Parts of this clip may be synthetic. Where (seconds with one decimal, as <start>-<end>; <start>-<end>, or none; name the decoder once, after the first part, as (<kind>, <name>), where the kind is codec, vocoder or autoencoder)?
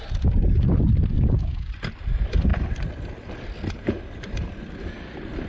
1.1-1.7 (codec, DAC)